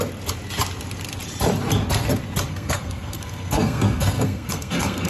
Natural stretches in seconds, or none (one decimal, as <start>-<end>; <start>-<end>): 0.0-2.5